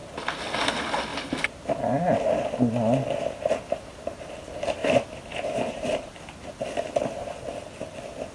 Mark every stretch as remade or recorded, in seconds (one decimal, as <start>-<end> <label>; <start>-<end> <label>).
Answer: 0.0-1.1 recorded; 1.1-2.2 remade; 2.2-8.3 recorded